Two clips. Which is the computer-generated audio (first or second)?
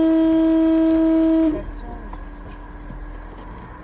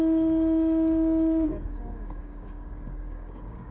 second